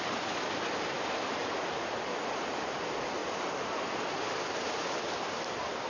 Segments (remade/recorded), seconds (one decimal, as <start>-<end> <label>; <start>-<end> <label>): 0.0-1.4 remade; 1.4-2.0 recorded; 2.0-5.9 remade